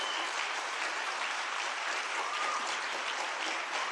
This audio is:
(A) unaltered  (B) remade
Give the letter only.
B